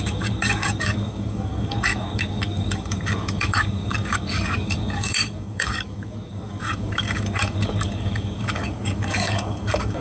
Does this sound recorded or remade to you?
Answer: remade